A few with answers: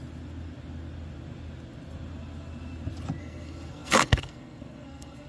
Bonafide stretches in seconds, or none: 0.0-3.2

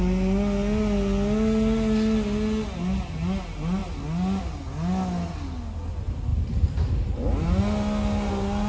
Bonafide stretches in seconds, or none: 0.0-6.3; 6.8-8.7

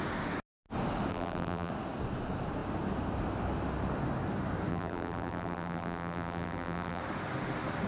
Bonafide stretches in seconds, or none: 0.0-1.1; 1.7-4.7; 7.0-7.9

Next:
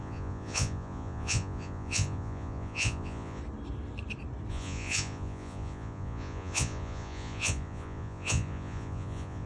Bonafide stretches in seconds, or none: 3.4-4.5

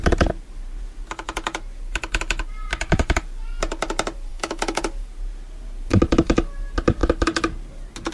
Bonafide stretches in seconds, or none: 0.0-4.3; 4.8-8.1

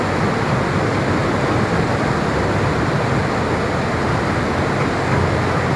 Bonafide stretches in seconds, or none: 0.0-5.8